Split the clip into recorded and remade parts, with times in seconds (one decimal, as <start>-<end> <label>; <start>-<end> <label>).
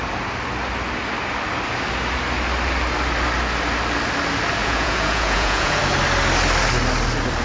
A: 0.0-4.6 recorded; 4.6-5.8 remade; 5.8-7.4 recorded